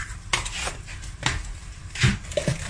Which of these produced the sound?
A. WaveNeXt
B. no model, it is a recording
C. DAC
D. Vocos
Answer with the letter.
B